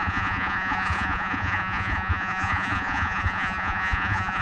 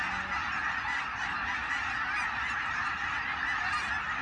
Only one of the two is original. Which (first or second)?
second